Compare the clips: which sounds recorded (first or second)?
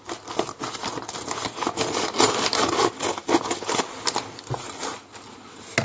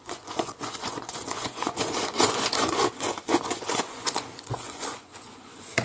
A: first